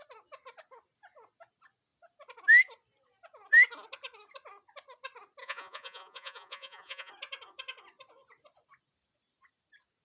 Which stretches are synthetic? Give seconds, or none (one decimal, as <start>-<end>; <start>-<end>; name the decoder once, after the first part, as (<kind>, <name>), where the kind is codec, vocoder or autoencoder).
5.4-7.1 (vocoder, Vocos)